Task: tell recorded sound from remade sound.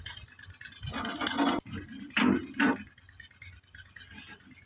recorded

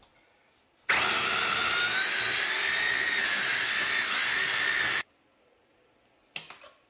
recorded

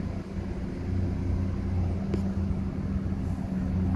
recorded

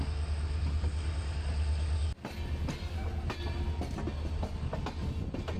recorded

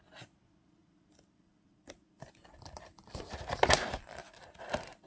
recorded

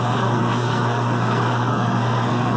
remade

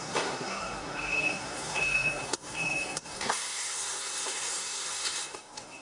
remade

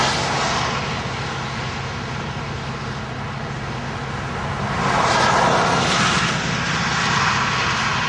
recorded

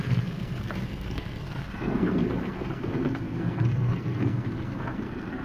remade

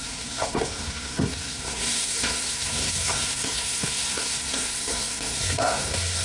remade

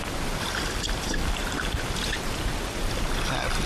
recorded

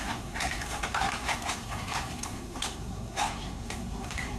remade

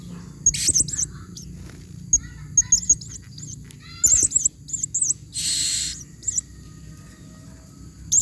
recorded